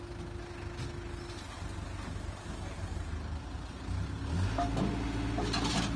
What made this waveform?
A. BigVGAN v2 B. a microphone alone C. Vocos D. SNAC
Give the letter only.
B